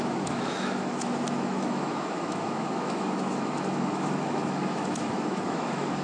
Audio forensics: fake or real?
fake